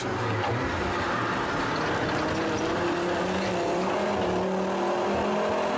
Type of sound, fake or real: real